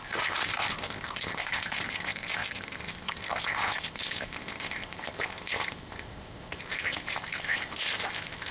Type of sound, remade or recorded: remade